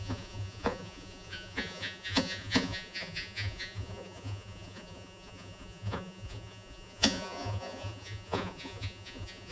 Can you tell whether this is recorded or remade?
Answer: remade